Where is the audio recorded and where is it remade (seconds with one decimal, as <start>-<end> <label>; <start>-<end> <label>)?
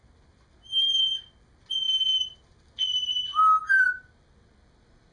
0.0-3.1 remade; 3.1-3.7 recorded; 3.7-5.1 remade